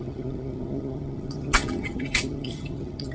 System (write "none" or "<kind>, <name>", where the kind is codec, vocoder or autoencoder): vocoder, HiFi-GAN